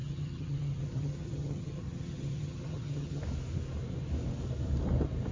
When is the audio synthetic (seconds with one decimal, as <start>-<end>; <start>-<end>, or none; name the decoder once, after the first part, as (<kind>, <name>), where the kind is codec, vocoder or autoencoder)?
0.0-3.2 (vocoder, HiFi-GAN)